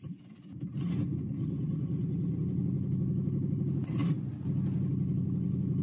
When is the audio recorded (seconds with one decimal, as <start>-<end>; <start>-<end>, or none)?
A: 0.0-5.8